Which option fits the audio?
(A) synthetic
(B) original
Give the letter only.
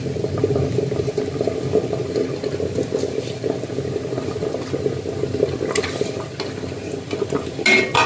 B